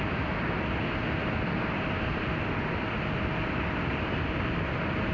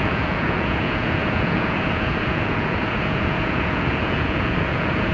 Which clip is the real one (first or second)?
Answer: first